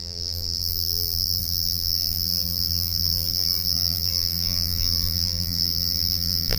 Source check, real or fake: fake